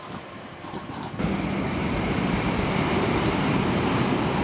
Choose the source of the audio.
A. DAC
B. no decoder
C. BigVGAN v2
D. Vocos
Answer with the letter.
C